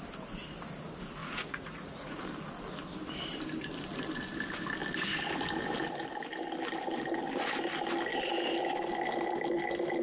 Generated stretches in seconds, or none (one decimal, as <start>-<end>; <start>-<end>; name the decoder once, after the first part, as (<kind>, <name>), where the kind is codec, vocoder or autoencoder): 1.2-2.2 (vocoder, Vocos)